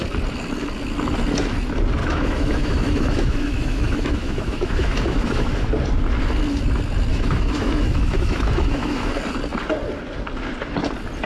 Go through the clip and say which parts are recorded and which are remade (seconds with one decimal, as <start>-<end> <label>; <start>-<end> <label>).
0.0-2.0 recorded; 2.0-5.7 remade; 5.7-7.1 recorded; 7.1-9.1 remade; 9.1-11.3 recorded